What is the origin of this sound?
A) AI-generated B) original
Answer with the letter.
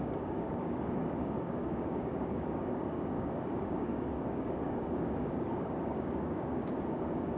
A